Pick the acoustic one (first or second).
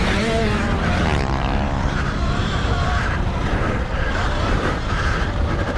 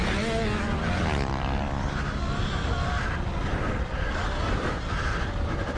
second